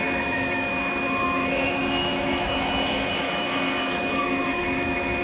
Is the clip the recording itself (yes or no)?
no